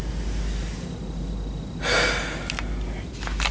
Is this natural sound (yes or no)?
yes